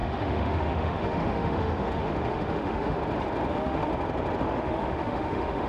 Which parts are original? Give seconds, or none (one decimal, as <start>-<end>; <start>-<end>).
3.0-3.5; 3.9-4.4